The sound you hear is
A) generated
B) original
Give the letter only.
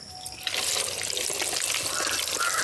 B